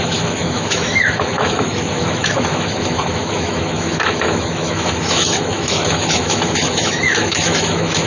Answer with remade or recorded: remade